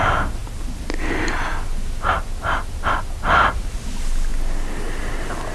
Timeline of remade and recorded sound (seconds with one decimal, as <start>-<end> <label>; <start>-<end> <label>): 0.0-5.5 recorded